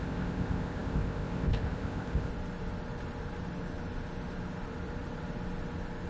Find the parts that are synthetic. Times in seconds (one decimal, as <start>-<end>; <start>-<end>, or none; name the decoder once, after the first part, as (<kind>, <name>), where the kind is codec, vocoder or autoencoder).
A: 0.0-2.3 (codec, ZipCodec)